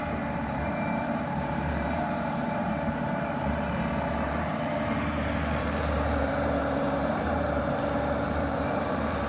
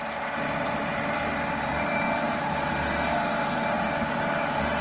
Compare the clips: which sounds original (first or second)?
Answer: second